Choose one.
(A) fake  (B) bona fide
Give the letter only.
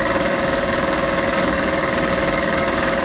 A